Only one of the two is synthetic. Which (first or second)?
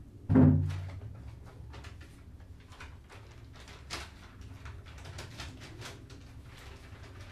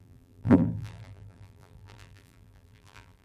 second